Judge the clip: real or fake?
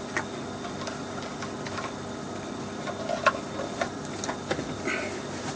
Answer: real